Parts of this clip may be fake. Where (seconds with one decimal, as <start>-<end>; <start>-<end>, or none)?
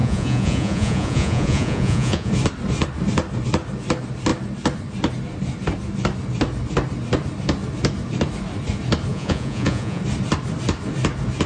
0.0-2.3; 9.1-10.0